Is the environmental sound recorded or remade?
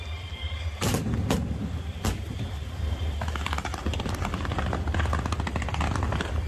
recorded